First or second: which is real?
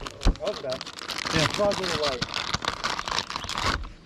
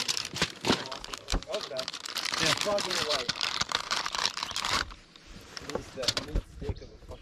first